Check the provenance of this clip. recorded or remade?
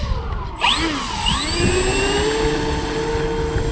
recorded